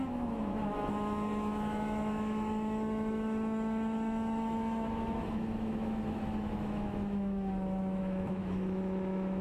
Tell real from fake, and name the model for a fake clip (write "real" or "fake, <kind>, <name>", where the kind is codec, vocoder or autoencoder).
fake, autoencoder, DAC-VAE